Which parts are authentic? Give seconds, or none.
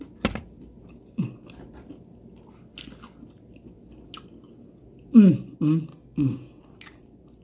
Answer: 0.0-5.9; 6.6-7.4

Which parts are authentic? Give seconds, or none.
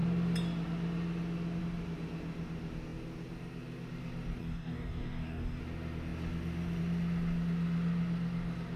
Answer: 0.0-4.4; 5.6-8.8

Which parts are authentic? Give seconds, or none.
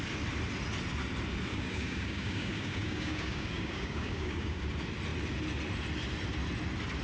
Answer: 0.0-1.5; 4.6-7.0